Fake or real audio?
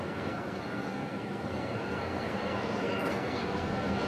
fake